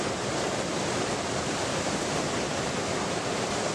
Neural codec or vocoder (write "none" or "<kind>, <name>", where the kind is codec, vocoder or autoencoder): none